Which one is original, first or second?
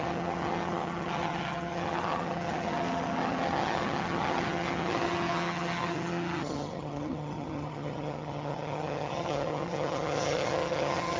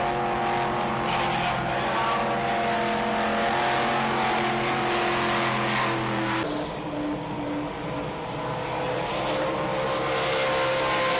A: second